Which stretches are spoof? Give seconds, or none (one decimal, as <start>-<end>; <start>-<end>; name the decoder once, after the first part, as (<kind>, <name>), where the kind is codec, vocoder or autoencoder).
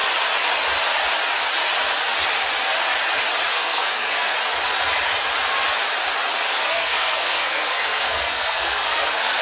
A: 3.5-4.3 (codec, SNAC); 6.5-9.4